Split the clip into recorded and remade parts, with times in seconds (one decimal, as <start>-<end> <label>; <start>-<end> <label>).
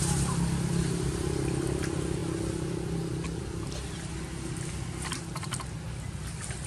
0.0-6.7 recorded